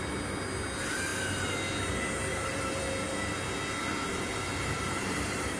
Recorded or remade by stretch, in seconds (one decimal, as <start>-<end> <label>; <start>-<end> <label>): 0.0-2.3 recorded; 2.3-2.8 remade; 2.8-4.1 recorded; 4.1-5.6 remade